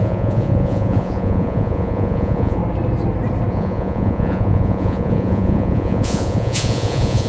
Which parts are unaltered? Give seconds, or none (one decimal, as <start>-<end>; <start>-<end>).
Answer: 2.6-3.5